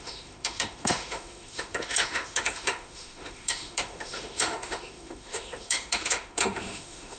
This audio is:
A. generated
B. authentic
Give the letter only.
A